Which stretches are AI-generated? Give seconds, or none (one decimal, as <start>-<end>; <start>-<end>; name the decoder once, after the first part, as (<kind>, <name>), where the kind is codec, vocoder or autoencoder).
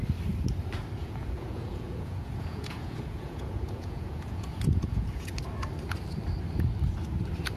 1.0-5.3 (vocoder, Vocos)